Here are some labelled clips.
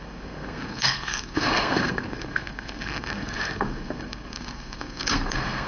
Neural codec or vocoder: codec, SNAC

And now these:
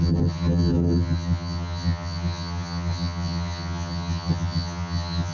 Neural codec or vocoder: vocoder, HiFi-GAN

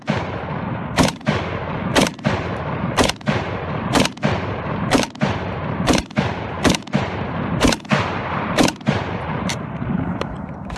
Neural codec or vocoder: vocoder, BigVGAN v2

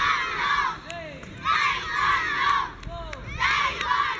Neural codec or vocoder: none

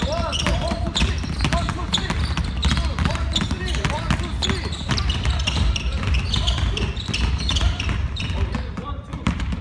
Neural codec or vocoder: vocoder, BigVGAN v2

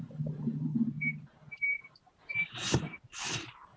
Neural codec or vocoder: vocoder, BigVGAN v2